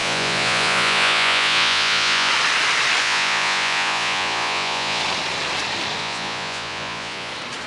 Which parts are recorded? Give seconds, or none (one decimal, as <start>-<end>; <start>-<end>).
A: 2.3-3.0; 5.0-6.0; 7.3-7.7